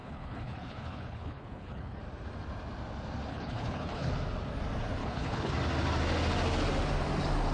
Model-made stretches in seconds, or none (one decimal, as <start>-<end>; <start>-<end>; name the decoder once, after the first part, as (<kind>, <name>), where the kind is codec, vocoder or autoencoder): 0.0-2.0 (codec, HILCodec); 3.3-4.1; 5.0-5.5